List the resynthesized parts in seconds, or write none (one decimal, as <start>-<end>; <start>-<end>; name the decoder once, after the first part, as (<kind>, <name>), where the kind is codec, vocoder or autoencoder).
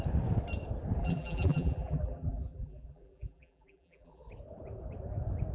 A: 1.0-4.3 (vocoder, BigVGAN v2)